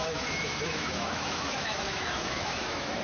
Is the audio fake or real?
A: fake